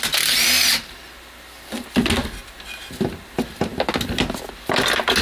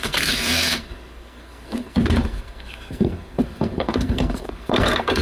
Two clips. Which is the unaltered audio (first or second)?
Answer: first